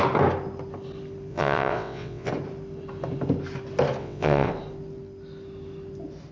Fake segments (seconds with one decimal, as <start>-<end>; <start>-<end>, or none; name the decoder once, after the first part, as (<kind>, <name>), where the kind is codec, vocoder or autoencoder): 1.3-2.3 (vocoder, WaveNeXt); 4.0-4.5